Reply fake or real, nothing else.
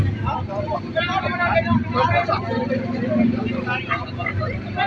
real